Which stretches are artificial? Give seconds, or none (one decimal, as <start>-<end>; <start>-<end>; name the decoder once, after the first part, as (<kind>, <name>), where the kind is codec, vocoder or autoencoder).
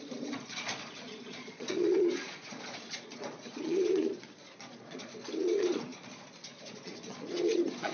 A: 0.0-7.9 (vocoder, Vocos)